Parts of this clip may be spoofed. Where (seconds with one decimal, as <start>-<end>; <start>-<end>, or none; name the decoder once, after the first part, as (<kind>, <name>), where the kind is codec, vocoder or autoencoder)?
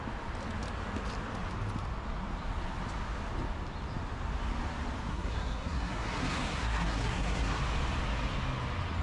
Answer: 5.1-7.6 (codec, SNAC)